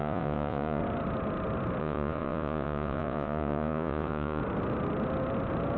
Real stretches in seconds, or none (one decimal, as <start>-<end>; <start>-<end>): 0.8-1.8; 4.4-5.8